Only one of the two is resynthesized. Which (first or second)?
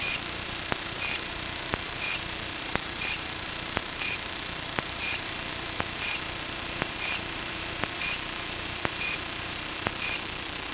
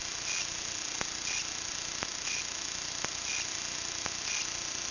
first